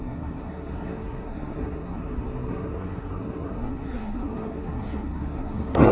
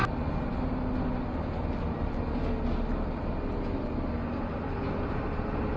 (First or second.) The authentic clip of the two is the second